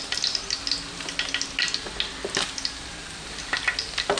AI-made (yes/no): no